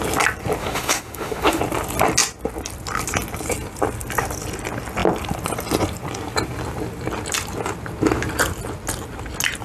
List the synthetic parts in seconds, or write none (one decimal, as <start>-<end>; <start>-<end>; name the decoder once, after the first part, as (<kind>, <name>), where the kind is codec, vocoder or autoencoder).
0.6-1.6 (autoencoder, DAC-VAE)